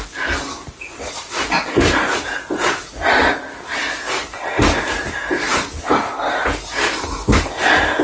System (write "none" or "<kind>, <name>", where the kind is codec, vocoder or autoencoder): none